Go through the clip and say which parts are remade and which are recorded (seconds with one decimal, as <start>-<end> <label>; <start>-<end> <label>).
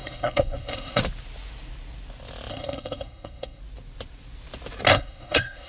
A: 0.0-1.0 remade; 1.0-2.5 recorded; 2.5-3.6 remade; 3.6-4.9 recorded; 4.9-5.7 remade